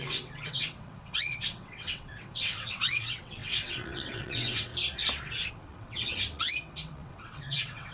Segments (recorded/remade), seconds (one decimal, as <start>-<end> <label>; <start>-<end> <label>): 0.0-4.7 remade; 4.7-5.5 recorded; 5.5-7.9 remade